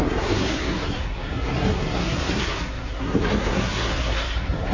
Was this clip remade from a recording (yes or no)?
yes